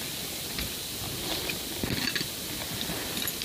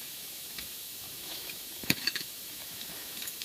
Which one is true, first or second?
first